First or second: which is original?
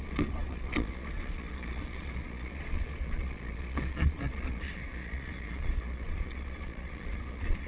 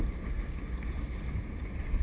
second